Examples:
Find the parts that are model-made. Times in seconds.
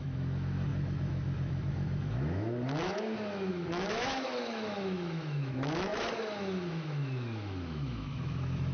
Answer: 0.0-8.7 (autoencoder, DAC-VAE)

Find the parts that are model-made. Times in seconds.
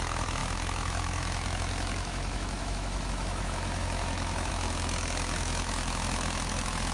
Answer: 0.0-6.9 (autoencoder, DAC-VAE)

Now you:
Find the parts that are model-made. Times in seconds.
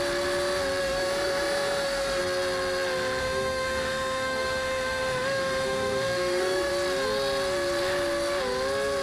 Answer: 0.8-2.2 (autoencoder, DAC-VAE); 3.2-6.7